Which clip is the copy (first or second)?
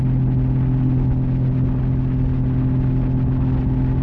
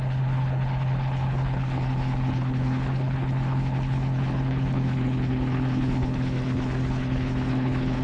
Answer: second